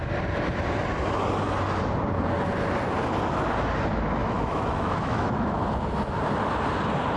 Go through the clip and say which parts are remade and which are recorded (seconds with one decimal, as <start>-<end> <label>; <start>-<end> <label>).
0.0-4.2 recorded; 4.2-5.5 remade; 5.5-7.2 recorded